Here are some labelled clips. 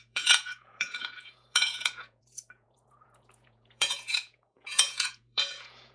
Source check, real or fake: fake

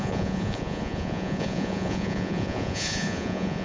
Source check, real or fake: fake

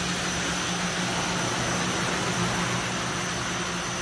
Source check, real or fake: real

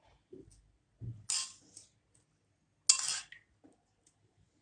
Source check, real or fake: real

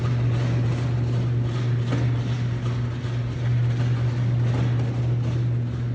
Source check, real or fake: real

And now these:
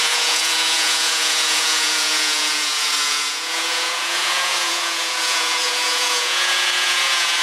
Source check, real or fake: fake